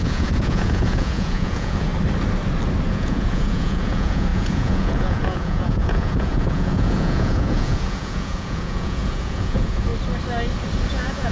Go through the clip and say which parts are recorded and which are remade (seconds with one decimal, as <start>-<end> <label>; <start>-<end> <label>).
0.0-1.9 remade; 1.9-2.9 recorded; 2.9-9.9 remade; 9.9-10.9 recorded; 10.9-11.3 remade